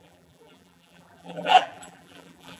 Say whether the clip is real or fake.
fake